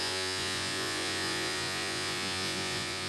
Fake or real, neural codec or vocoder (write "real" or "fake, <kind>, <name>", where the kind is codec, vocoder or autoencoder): fake, vocoder, Vocos